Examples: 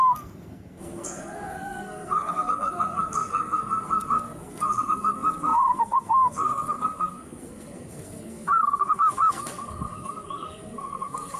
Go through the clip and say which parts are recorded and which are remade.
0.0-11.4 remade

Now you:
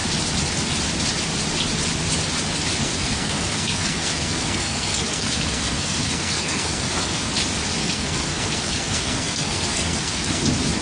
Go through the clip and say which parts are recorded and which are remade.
0.0-2.8 recorded; 2.8-7.3 remade; 7.3-7.8 recorded; 7.8-10.4 remade; 10.4-10.8 recorded

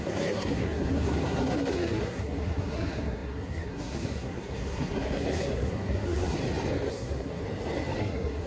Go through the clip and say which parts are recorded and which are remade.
0.0-6.4 remade; 6.4-6.9 recorded; 6.9-7.4 remade; 7.4-8.0 recorded; 8.0-8.5 remade

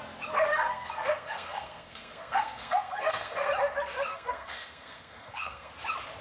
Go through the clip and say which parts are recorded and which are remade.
0.0-0.5 recorded; 0.5-3.5 remade; 3.5-4.1 recorded; 4.1-5.7 remade; 5.7-6.2 recorded

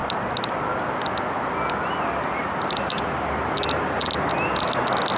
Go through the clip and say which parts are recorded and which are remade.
0.0-5.2 recorded

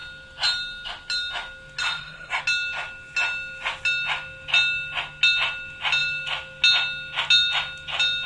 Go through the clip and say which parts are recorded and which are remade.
0.0-1.8 recorded; 1.8-2.4 remade; 2.4-8.3 recorded

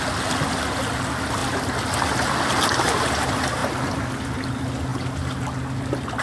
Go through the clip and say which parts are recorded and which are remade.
0.0-6.2 recorded

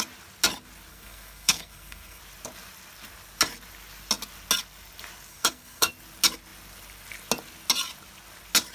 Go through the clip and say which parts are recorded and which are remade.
0.0-0.9 recorded; 0.9-2.2 remade; 2.2-5.3 recorded; 5.3-5.9 remade; 5.9-8.7 recorded